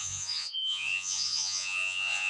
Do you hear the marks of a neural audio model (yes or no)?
yes